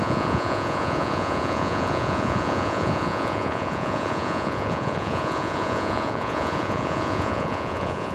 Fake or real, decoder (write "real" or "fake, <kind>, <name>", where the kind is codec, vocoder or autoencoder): fake, vocoder, Vocos